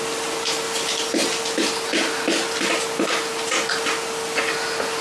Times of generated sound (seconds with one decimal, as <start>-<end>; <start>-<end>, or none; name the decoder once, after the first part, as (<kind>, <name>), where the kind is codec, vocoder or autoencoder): none